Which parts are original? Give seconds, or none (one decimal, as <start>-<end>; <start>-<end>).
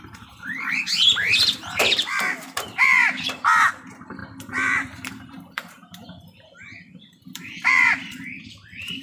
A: none